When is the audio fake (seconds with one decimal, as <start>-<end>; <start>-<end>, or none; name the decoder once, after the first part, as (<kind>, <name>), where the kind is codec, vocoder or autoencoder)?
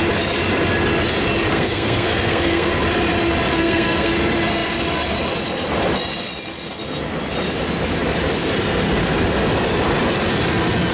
1.5-2.7 (codec, SNAC); 3.5-4.1